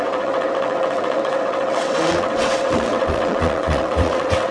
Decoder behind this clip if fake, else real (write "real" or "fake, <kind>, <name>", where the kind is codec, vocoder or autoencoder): fake, vocoder, WaveNeXt